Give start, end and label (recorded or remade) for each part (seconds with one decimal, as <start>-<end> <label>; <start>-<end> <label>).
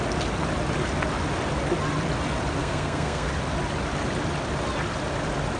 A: 0.0-2.6 recorded; 2.6-3.3 remade; 3.3-5.6 recorded